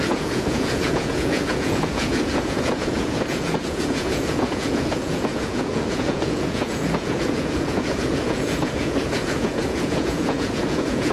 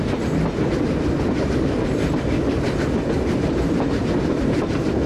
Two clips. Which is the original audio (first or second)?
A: second